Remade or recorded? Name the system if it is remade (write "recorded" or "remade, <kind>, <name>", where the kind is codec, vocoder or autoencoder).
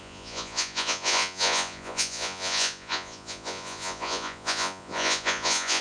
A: remade, vocoder, Vocos